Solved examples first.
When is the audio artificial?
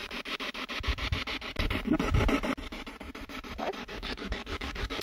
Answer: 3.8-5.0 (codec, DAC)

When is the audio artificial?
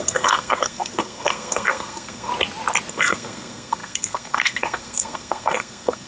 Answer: 0.0-2.3 (codec, SNAC); 2.9-6.1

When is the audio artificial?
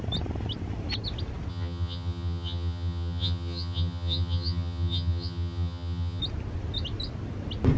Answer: 1.5-6.2 (vocoder, HiFi-GAN)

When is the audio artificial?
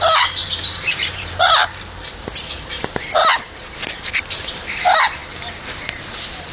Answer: 0.4-1.8 (vocoder, BigVGAN v2); 5.2-6.5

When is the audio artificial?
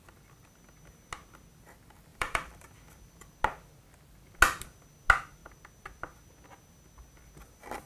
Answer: 2.1-3.3 (vocoder, BigVGAN v2)